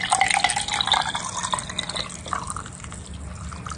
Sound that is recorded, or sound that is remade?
recorded